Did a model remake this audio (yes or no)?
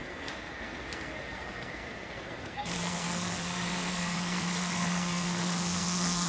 yes